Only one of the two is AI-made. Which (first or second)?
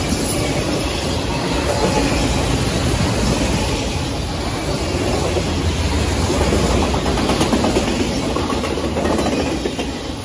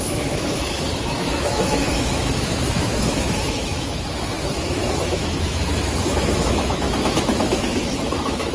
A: second